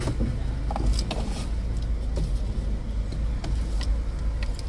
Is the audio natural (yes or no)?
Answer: yes